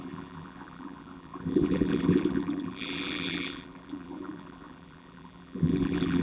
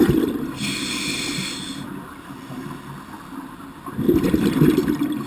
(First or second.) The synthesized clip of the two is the first